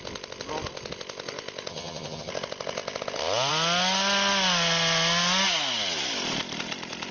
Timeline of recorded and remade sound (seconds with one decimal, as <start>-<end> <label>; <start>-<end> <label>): 0.0-1.7 recorded; 1.7-2.3 remade; 2.3-7.1 recorded